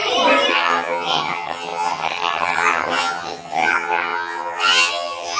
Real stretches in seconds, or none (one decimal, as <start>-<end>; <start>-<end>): 0.0-0.5